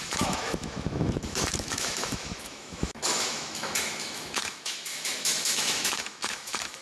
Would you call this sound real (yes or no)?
no